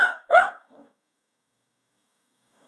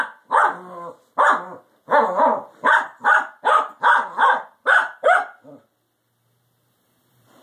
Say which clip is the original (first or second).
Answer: second